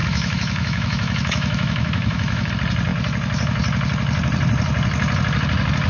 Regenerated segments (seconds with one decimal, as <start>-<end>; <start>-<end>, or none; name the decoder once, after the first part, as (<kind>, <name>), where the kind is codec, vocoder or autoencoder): 0.0-2.5 (autoencoder, DAC-VAE)

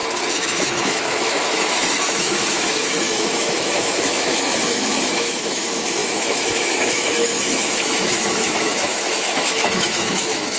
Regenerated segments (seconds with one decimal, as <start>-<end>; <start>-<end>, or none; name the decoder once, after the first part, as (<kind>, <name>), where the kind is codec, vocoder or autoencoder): 0.0-10.6 (autoencoder, DAC-VAE)

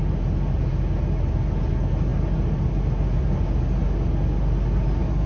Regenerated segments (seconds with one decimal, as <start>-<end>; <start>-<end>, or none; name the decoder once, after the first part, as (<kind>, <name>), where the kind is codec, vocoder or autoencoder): none

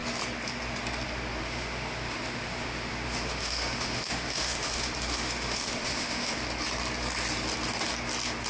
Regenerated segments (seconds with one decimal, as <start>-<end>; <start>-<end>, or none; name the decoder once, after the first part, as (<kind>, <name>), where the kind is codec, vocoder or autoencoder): 1.4-6.4 (autoencoder, DAC-VAE)